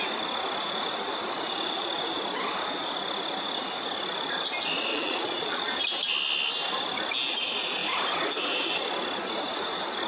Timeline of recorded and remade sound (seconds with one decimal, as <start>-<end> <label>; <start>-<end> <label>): 0.0-4.9 recorded; 4.9-5.7 remade; 5.7-10.1 recorded